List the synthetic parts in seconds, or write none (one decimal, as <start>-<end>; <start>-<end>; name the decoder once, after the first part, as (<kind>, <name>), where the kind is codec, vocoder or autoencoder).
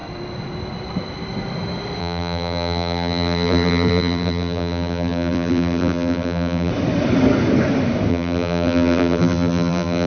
2.0-6.7 (vocoder, BigVGAN v2); 8.1-10.1